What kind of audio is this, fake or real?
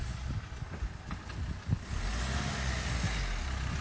real